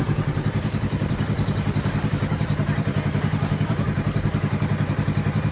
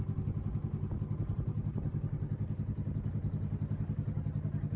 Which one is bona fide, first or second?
second